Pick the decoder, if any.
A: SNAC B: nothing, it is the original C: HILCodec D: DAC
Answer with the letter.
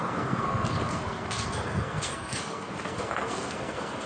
A